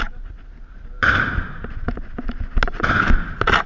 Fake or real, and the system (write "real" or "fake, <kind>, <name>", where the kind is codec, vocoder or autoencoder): real